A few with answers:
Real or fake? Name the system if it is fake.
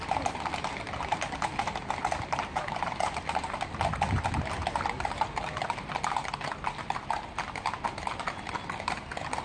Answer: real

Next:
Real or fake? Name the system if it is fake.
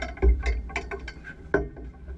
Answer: real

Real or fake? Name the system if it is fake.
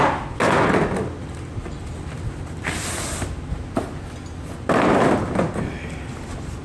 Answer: real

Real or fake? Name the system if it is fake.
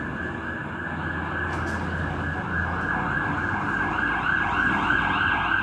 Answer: real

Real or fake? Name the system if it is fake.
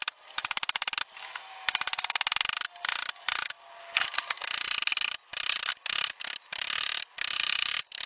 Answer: real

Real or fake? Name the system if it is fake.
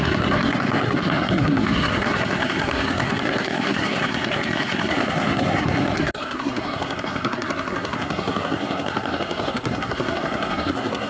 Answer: fake, codec, SNAC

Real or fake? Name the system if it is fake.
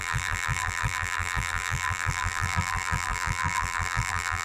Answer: fake, vocoder, BigVGAN v2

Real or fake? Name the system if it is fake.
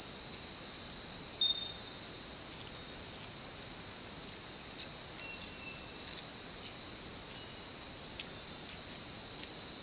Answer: real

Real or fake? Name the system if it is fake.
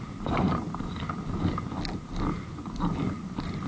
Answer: real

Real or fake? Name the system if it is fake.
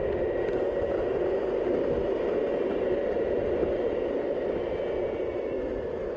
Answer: real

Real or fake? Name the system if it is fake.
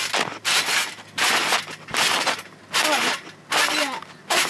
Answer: real